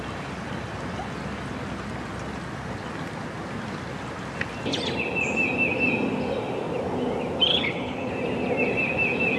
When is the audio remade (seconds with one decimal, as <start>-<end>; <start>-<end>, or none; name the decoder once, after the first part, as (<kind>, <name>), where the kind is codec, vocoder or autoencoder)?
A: 7.5-8.1 (codec, HILCodec)